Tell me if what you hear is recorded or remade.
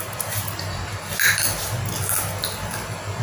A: recorded